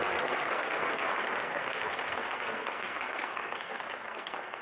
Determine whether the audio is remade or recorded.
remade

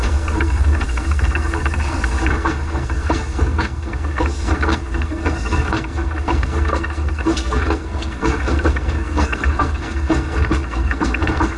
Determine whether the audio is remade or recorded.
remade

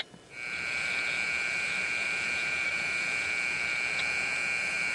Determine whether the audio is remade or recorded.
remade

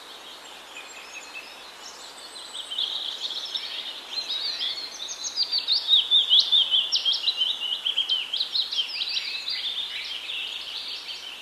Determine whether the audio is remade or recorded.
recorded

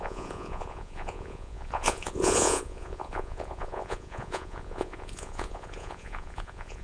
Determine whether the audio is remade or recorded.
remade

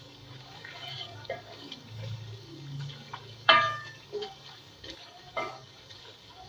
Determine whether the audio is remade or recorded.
remade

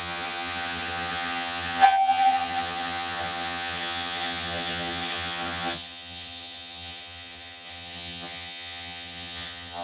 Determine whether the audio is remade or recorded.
remade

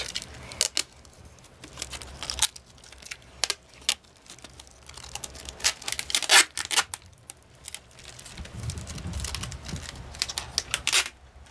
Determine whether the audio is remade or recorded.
recorded